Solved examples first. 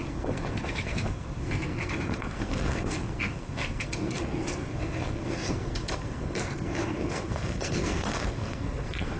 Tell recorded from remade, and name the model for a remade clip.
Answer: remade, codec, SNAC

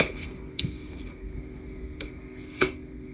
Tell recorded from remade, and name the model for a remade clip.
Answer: remade, codec, SNAC